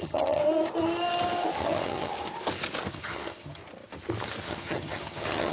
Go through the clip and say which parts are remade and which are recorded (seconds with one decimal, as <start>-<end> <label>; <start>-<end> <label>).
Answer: 0.0-0.4 remade; 0.4-1.6 recorded; 1.6-2.1 remade; 2.1-2.9 recorded; 2.9-3.6 remade; 3.6-4.4 recorded; 4.4-5.5 remade